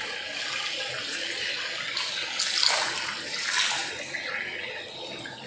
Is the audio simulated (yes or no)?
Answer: no